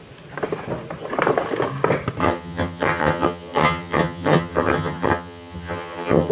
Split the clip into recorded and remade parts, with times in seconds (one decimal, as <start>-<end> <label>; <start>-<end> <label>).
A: 0.0-2.2 recorded; 2.2-6.3 remade